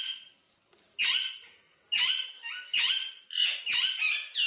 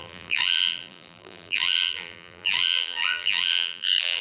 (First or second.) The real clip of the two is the first